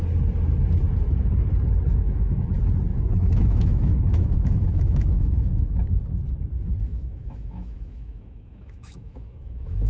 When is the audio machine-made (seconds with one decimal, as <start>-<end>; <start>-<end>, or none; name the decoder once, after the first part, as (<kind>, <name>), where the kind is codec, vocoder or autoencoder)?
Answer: 1.9-2.5 (autoencoder, DAC-VAE); 2.9-6.0; 6.9-9.9